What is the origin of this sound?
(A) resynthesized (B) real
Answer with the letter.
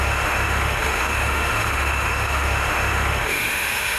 A